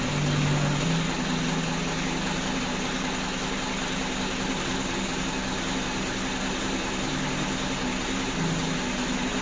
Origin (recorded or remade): recorded